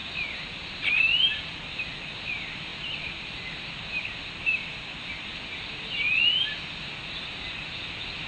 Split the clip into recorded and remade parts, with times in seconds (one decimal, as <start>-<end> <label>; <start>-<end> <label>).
0.0-8.3 recorded